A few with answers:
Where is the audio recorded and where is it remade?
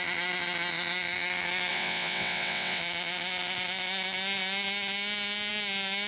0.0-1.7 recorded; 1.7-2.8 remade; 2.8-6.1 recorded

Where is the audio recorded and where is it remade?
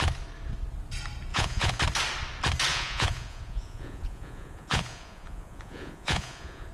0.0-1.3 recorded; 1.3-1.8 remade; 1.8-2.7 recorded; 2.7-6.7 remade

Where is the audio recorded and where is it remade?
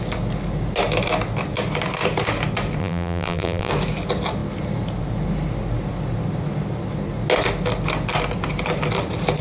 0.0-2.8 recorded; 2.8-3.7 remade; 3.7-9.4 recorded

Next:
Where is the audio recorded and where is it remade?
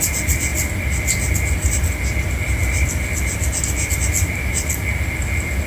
0.0-5.7 recorded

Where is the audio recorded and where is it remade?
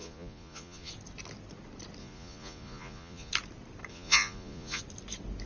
0.0-0.9 remade; 0.9-2.0 recorded; 2.0-3.3 remade; 3.3-3.9 recorded; 3.9-4.8 remade; 4.8-5.5 recorded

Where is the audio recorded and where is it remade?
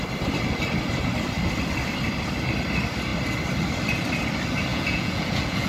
0.0-4.7 recorded; 4.7-5.7 remade